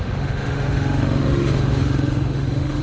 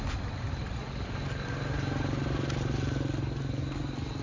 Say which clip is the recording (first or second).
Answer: second